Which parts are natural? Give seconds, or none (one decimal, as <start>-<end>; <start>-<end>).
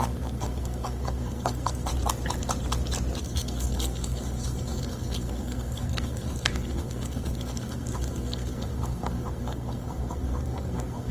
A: 1.9-3.2